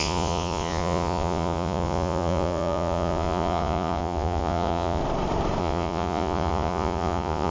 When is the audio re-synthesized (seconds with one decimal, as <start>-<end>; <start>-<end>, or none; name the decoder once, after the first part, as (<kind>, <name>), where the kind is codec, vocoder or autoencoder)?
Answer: 0.0-5.0 (vocoder, Vocos); 5.6-7.5